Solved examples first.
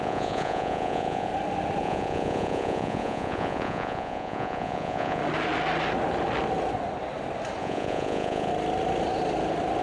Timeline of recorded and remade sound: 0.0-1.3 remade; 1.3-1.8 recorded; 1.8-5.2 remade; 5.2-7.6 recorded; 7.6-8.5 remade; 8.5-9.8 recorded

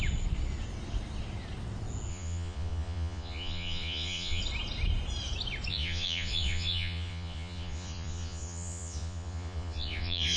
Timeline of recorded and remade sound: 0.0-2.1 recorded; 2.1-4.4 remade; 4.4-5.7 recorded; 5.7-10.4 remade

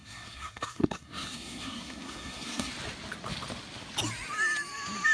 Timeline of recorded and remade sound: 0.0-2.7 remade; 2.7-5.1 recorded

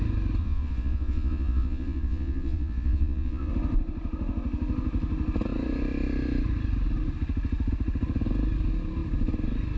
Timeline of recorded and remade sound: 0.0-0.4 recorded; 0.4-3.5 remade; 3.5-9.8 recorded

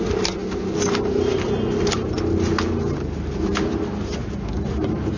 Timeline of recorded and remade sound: 0.0-5.2 recorded

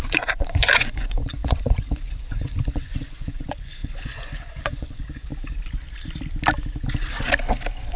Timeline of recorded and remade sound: 0.0-5.3 remade; 5.3-8.0 recorded